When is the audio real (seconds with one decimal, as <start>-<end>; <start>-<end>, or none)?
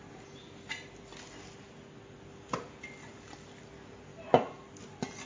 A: 0.0-5.3